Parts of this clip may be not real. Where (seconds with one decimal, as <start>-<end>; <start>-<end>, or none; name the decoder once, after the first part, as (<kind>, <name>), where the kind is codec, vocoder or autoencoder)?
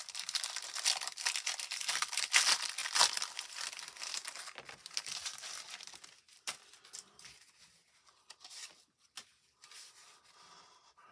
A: none